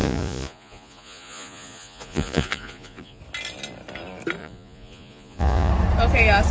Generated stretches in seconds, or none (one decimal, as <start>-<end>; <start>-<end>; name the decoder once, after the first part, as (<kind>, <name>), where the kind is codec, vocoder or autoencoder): 0.0-3.2 (vocoder, Vocos); 4.4-5.7